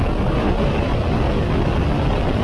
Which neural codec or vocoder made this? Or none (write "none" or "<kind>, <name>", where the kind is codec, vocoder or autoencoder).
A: none